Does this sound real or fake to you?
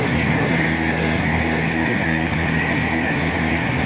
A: fake